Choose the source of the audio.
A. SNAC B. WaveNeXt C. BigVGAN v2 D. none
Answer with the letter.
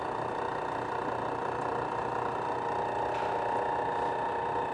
D